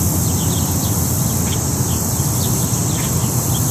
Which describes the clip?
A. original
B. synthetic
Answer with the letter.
A